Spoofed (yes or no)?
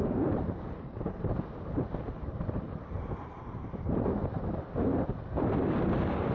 yes